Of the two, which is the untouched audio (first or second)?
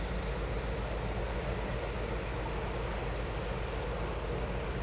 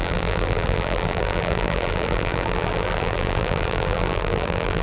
first